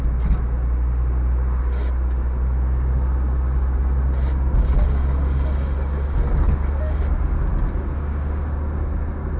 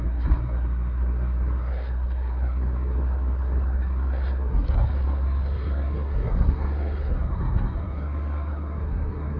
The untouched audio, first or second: first